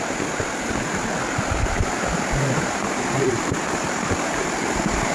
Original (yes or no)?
no